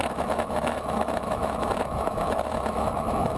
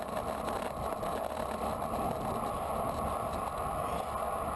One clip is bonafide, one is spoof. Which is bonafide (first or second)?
second